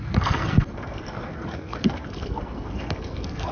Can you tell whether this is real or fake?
fake